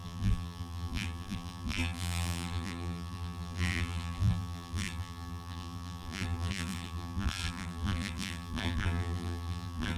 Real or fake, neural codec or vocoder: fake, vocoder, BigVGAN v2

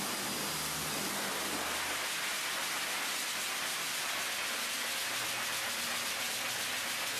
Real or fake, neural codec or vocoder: real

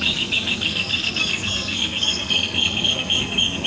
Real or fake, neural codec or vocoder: fake, codec, SNAC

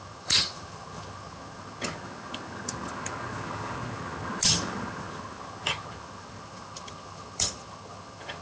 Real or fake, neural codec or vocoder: fake, vocoder, HiFi-GAN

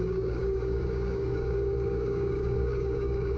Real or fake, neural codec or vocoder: fake, codec, DAC